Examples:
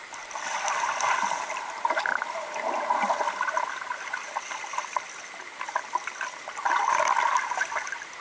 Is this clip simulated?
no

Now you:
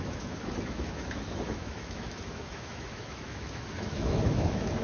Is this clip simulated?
yes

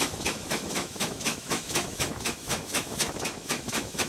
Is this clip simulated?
yes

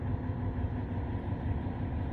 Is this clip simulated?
no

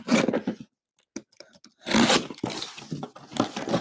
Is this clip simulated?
no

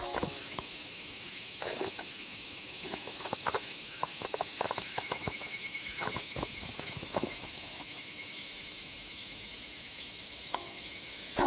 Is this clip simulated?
yes